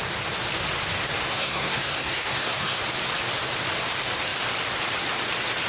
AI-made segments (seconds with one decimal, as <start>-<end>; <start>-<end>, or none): 1.3-2.8